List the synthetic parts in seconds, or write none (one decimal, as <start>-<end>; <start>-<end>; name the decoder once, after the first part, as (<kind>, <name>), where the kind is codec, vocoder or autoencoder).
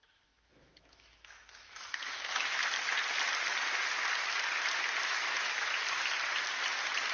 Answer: 0.0-2.6 (autoencoder, DAC-VAE); 5.0-5.7